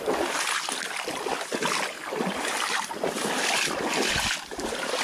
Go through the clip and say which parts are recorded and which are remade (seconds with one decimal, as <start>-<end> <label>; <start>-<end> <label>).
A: 0.0-5.0 recorded